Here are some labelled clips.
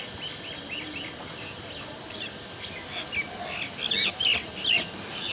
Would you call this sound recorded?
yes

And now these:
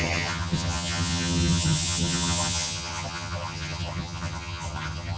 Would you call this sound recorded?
no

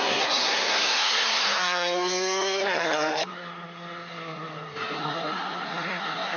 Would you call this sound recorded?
no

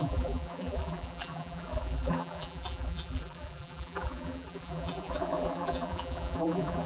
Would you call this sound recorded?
no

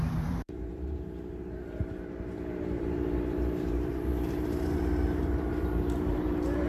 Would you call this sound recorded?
no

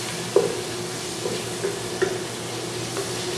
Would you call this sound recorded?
yes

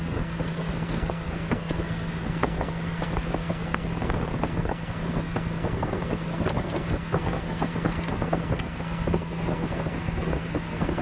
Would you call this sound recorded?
no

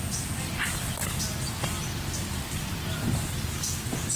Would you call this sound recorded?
yes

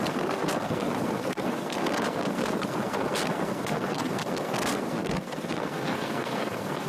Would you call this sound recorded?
no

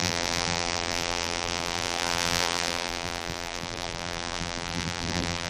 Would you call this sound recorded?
no